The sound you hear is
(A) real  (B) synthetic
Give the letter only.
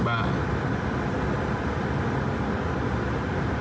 A